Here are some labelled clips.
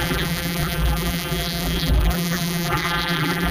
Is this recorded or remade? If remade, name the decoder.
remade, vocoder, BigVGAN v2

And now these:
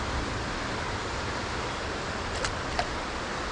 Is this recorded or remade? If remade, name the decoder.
recorded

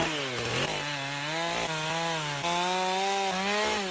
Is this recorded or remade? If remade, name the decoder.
recorded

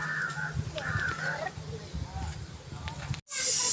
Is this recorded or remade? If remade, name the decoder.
recorded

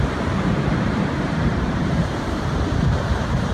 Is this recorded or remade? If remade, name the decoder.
remade, vocoder, BigVGAN v2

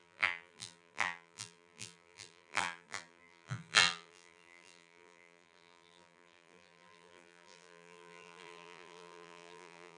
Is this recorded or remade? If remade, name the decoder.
remade, vocoder, BigVGAN v2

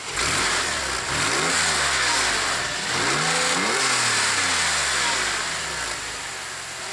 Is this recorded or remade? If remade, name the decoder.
recorded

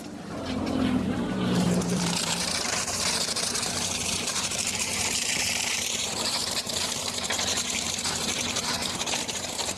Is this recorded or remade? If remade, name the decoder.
remade, vocoder, BigVGAN v2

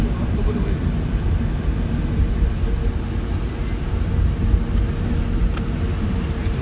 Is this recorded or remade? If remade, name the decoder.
recorded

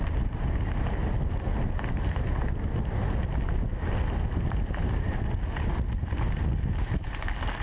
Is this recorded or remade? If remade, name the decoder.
recorded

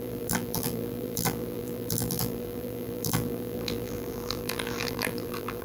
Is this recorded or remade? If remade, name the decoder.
remade, vocoder, BigVGAN v2